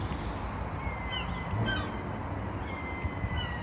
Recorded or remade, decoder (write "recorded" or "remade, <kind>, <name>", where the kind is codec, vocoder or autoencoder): recorded